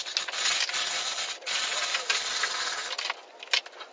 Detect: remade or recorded recorded